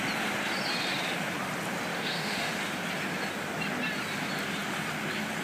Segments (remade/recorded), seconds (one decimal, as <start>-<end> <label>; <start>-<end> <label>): 0.0-1.9 recorded; 1.9-2.5 remade; 2.5-5.4 recorded